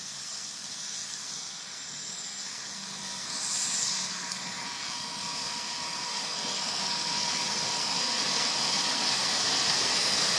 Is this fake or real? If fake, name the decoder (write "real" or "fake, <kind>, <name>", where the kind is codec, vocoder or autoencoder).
fake, codec, SNAC